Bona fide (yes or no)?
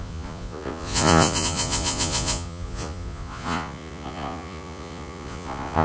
no